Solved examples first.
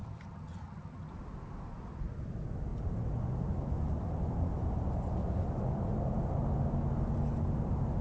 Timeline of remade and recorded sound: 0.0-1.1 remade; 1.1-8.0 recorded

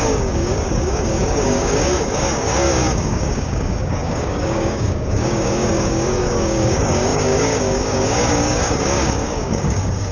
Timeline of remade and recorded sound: 0.0-10.1 remade

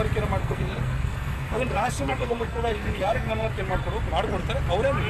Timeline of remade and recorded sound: 0.0-0.4 recorded; 0.4-3.5 remade; 3.5-5.1 recorded

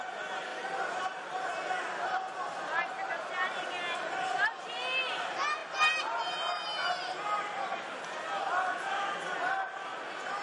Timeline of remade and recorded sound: 0.0-0.5 recorded; 0.5-1.5 remade; 1.5-10.4 recorded

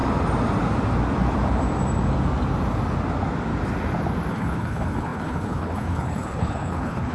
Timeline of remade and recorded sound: 0.0-4.3 recorded; 4.3-7.1 remade